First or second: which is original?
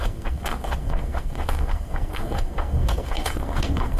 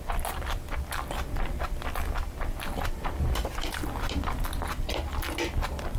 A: second